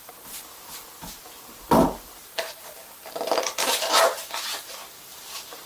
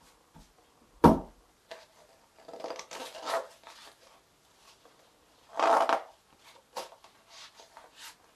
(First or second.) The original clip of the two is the second